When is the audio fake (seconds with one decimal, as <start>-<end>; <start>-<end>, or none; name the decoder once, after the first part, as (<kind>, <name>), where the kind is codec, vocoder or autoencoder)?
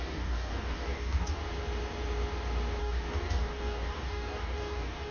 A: 0.0-1.4 (codec, DAC); 2.8-5.1